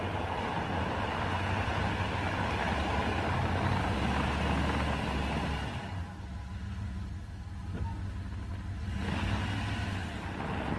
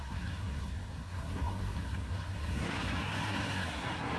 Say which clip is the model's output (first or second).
second